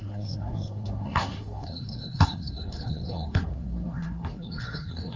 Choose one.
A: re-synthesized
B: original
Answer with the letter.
A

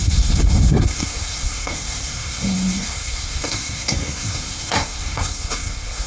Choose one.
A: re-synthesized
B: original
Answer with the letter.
A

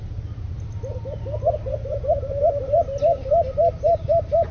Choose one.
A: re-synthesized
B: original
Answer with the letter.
B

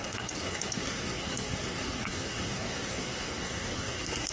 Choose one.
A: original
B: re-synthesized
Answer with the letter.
B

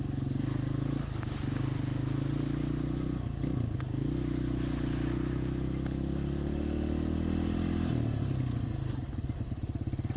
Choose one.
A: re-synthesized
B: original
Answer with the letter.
B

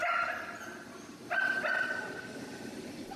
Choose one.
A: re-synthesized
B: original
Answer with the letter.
B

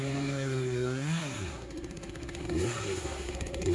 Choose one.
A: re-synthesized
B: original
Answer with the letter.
A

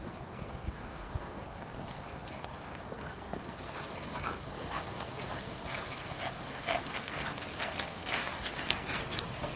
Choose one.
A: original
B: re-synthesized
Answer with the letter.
B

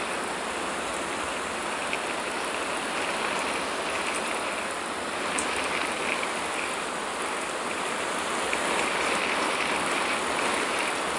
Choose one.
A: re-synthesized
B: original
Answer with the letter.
B